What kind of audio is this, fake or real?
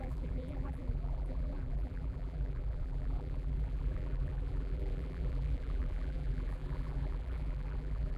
fake